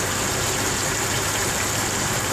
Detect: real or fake fake